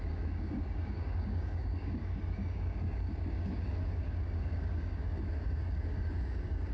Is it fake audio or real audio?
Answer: fake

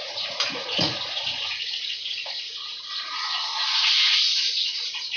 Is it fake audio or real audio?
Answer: fake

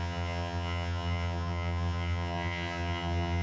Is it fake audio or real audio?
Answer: fake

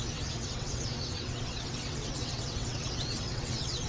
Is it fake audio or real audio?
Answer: fake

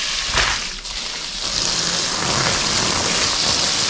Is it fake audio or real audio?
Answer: real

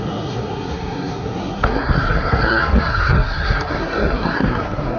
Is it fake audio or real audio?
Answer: fake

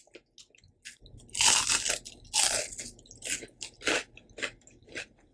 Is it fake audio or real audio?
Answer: real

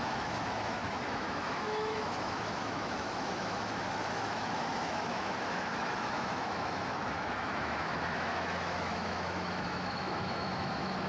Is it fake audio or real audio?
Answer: fake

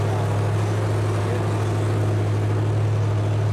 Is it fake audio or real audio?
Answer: real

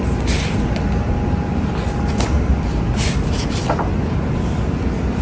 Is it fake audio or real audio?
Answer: real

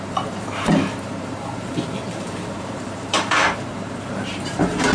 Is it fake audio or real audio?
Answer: fake